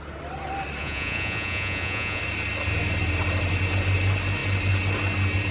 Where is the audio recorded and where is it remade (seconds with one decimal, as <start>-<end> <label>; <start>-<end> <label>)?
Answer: 0.0-0.8 recorded; 0.8-2.2 remade; 2.2-5.5 recorded